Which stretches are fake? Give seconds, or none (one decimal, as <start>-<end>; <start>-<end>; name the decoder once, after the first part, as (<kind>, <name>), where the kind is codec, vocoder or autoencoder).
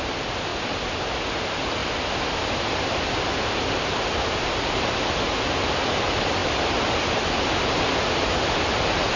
0.5-1.1 (vocoder, BigVGAN v2); 1.8-4.9; 6.4-7.1